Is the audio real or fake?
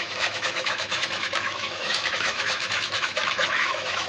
fake